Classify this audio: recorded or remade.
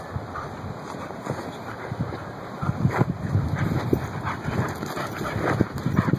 recorded